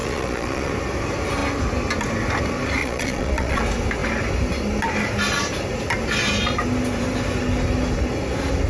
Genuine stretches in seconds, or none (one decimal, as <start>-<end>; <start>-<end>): 0.7-2.8; 3.6-8.7

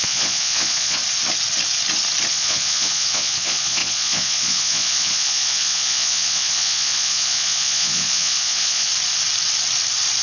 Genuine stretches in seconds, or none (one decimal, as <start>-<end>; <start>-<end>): 1.0-2.3; 8.9-10.2

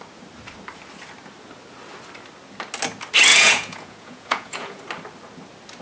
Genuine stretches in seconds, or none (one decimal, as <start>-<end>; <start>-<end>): 0.0-3.3; 4.8-5.8

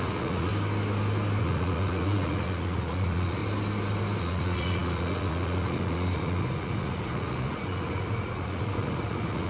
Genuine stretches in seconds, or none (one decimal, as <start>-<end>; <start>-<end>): 0.5-1.4; 3.4-4.2